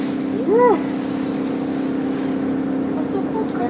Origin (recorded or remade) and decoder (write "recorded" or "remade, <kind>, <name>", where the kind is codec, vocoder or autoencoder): recorded